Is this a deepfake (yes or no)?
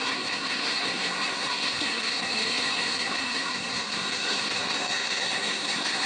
yes